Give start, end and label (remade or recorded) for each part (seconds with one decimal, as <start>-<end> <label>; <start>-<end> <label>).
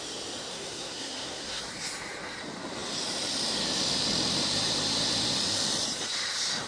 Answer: 0.0-0.5 recorded; 0.5-1.6 remade; 1.6-6.7 recorded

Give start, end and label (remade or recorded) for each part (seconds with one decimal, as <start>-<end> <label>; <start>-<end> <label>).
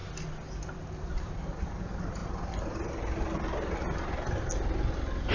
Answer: 0.0-5.3 recorded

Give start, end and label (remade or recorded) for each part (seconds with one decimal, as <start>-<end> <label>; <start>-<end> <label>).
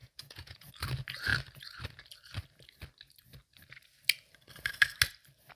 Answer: 0.0-0.7 remade; 0.7-5.6 recorded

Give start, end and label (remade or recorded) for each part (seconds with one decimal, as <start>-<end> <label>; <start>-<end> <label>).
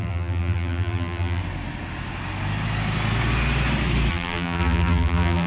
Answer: 0.0-1.4 remade; 1.4-4.1 recorded; 4.1-5.5 remade